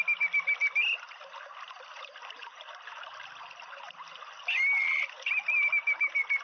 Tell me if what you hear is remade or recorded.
recorded